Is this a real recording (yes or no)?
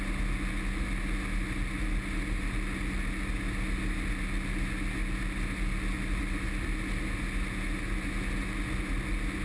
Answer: yes